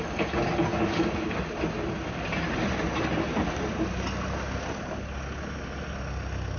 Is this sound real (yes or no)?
yes